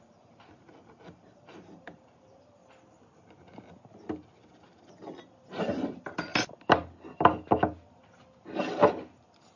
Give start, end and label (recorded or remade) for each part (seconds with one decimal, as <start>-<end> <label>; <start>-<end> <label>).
0.0-2.6 remade; 2.6-5.4 recorded; 5.4-6.3 remade; 6.3-9.6 recorded